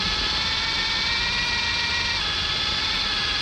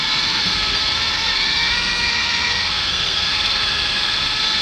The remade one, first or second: second